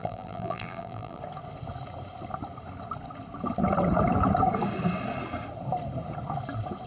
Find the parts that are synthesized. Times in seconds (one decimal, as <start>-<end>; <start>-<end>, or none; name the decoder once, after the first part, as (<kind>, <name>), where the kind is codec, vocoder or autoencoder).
0.0-1.2 (vocoder, BigVGAN v2)